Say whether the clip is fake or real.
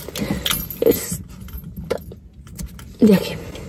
real